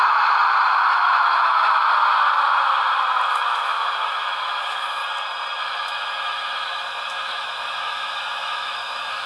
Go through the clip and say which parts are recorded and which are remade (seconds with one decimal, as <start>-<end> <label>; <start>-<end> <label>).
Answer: 0.0-1.8 remade; 1.8-3.3 recorded; 3.3-5.0 remade; 5.0-5.6 recorded; 5.6-9.3 remade